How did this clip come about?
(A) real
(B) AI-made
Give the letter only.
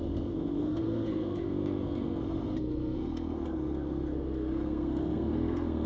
B